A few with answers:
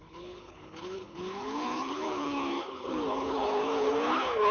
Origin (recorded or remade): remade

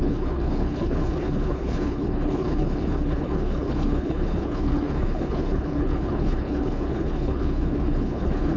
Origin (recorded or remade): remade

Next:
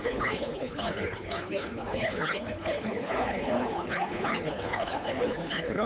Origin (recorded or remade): remade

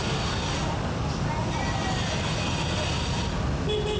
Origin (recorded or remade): recorded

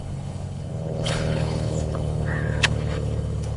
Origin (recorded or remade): remade